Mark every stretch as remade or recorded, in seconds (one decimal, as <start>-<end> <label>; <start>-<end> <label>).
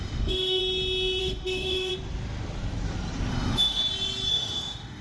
0.0-0.6 remade; 0.6-1.2 recorded; 1.2-1.9 remade; 1.9-3.3 recorded; 3.3-3.8 remade; 3.8-4.3 recorded; 4.3-5.0 remade